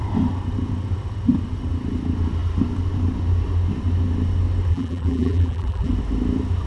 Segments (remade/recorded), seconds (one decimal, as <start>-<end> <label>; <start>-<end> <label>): 0.0-4.7 recorded; 4.7-5.9 remade; 5.9-6.7 recorded